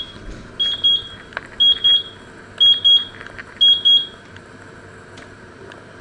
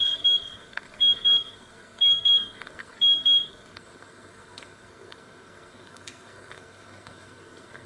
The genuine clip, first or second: first